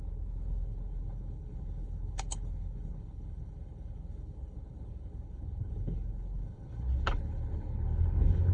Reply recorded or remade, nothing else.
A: remade